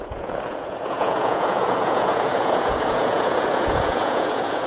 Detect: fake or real fake